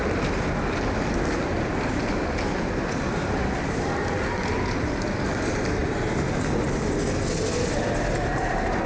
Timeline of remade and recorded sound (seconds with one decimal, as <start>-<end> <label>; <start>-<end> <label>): 0.0-8.9 recorded